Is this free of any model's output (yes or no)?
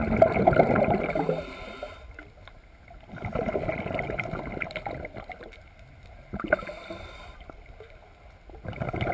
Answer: yes